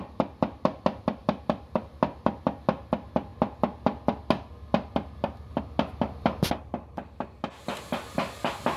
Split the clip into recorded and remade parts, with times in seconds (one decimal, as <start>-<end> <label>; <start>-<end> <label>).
0.0-8.8 recorded

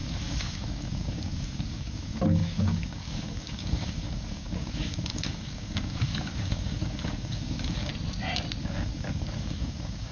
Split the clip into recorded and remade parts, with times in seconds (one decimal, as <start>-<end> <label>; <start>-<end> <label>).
0.0-7.9 remade; 7.9-8.6 recorded; 8.6-10.1 remade

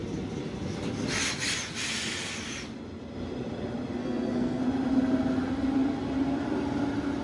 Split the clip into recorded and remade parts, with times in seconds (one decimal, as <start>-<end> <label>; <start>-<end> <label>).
0.0-4.0 recorded; 4.0-4.6 remade; 4.6-7.2 recorded

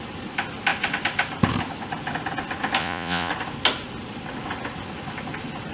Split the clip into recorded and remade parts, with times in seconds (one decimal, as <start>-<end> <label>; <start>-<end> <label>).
0.0-2.8 recorded; 2.8-3.3 remade; 3.3-5.7 recorded

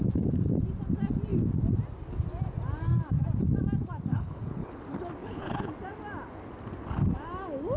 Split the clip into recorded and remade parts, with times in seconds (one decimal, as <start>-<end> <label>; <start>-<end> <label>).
0.0-4.1 recorded; 4.1-4.8 remade; 4.8-5.2 recorded; 5.2-5.7 remade; 5.7-7.8 recorded

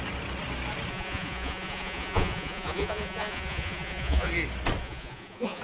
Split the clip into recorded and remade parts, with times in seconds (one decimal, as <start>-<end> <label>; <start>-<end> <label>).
0.0-0.9 recorded; 0.9-4.3 remade; 4.3-4.8 recorded; 4.8-5.6 remade